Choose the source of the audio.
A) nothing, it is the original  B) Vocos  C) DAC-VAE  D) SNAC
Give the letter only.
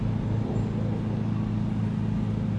A